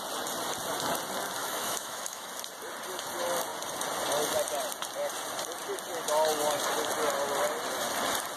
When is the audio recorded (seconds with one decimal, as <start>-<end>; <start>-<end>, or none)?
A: 0.0-1.4; 2.3-8.4